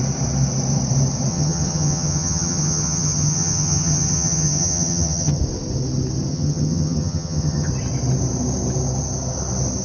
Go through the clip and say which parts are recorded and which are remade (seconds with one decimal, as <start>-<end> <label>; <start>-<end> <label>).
0.0-1.3 recorded; 1.3-5.4 remade; 5.4-6.3 recorded; 6.3-7.7 remade; 7.7-9.8 recorded

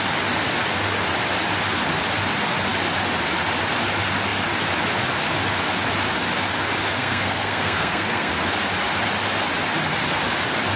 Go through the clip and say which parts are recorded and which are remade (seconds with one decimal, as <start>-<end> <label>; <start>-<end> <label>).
0.0-7.0 recorded; 7.0-8.3 remade; 8.3-10.8 recorded

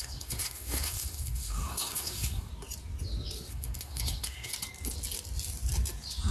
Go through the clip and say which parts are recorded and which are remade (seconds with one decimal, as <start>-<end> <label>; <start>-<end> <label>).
0.0-2.5 remade; 2.5-3.5 recorded; 3.5-4.5 remade; 4.5-6.3 recorded

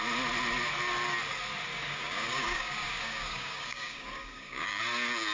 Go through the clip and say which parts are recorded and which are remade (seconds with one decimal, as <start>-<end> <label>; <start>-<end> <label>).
0.0-1.7 recorded; 1.7-4.8 remade; 4.8-5.3 recorded

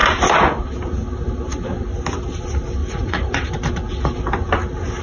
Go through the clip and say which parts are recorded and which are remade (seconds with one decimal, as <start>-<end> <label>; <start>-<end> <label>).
0.0-2.8 recorded; 2.8-3.5 remade; 3.5-5.0 recorded

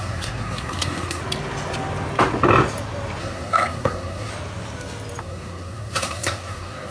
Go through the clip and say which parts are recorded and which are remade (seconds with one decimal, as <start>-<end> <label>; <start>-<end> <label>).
0.0-1.2 remade; 1.2-3.2 recorded; 3.2-4.3 remade; 4.3-5.2 recorded; 5.2-6.9 remade

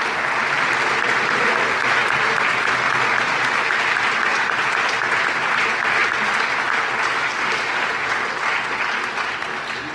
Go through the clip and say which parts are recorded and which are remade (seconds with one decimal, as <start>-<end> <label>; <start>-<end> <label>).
0.0-9.9 recorded

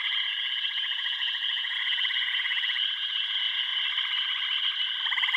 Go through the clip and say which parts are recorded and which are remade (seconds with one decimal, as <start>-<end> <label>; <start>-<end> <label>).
0.0-3.7 remade; 3.7-5.4 recorded